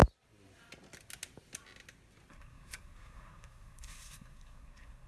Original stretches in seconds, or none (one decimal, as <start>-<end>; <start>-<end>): 0.0-2.3